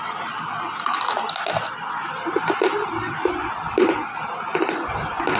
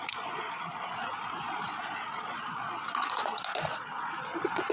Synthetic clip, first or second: second